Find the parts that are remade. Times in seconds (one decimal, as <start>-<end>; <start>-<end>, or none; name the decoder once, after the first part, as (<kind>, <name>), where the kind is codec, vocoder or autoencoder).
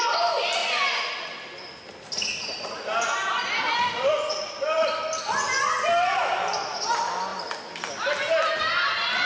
none